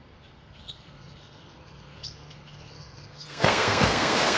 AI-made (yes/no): yes